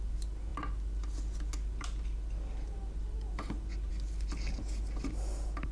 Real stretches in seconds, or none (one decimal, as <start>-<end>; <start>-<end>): 0.0-5.7